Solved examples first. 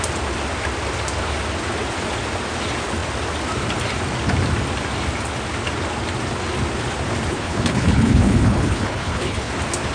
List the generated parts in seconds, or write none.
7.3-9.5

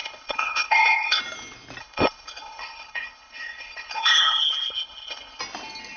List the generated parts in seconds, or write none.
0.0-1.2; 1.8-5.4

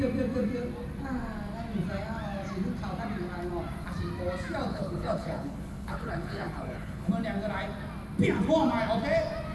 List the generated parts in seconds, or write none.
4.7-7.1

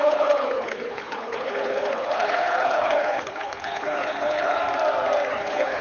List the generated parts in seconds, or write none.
0.0-4.6; 5.3-5.8